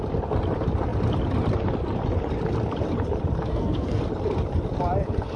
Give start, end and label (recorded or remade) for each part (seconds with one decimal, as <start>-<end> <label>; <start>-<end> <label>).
0.0-3.4 recorded; 3.4-4.0 remade; 4.0-5.4 recorded